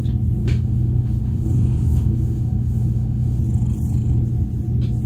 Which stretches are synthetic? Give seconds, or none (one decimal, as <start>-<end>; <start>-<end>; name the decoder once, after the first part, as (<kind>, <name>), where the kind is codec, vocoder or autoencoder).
0.4-3.4 (autoencoder, DAC-VAE)